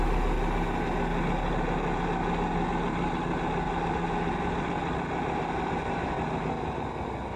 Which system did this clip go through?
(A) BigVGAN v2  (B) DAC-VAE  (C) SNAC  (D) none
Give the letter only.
D